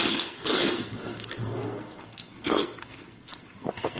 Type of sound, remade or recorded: remade